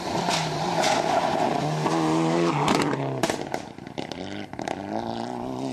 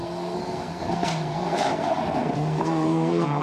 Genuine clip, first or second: first